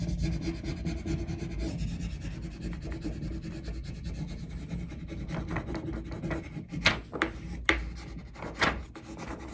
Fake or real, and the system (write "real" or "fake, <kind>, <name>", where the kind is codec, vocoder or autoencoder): real